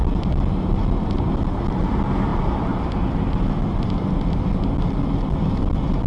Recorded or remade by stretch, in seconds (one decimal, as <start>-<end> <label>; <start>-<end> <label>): 0.0-6.1 recorded